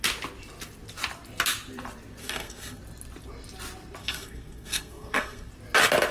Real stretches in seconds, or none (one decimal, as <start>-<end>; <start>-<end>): 0.0-2.2; 2.8-4.0; 5.5-6.1